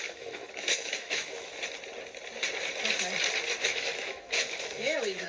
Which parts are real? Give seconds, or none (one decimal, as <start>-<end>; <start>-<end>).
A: 1.5-3.6